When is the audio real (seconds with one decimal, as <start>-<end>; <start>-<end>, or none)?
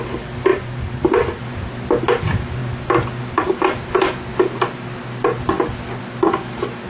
0.0-6.9